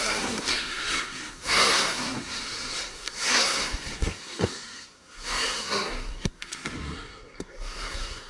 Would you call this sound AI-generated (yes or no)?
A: yes